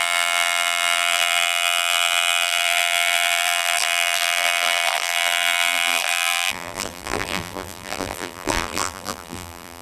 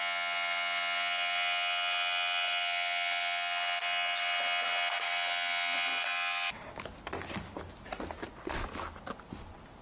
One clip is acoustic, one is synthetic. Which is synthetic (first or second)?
first